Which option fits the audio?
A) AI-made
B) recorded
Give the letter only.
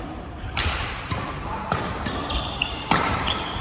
A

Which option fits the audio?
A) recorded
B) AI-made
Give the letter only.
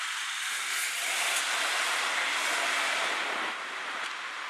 B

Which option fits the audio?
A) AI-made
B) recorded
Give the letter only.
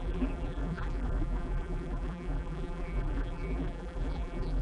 A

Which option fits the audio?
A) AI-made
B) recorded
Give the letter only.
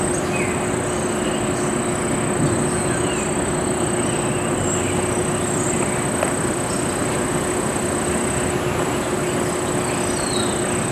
B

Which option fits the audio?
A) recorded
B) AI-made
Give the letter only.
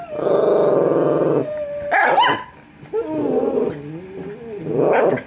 A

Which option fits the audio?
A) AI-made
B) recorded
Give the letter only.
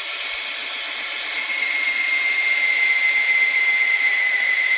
A